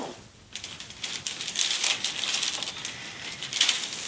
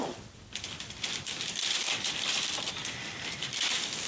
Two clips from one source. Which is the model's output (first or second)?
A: second